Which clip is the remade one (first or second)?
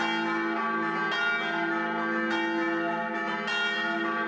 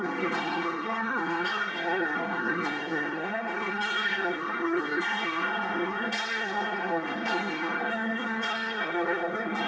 second